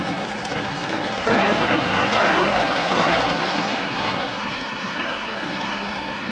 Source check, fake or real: fake